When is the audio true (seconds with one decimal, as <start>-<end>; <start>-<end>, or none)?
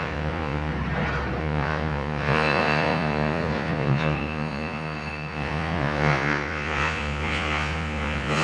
0.7-1.4